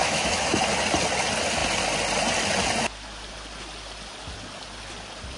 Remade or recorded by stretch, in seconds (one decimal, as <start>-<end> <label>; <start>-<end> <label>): 0.0-0.6 remade; 0.6-5.4 recorded